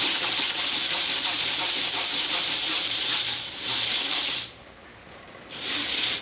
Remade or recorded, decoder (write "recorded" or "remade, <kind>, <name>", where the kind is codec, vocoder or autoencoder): remade, vocoder, BigVGAN v2